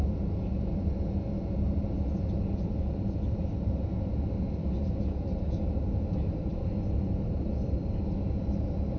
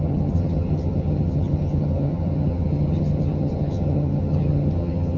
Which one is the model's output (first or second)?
second